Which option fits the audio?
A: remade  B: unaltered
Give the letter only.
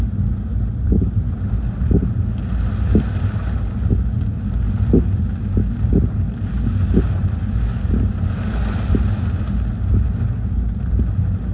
B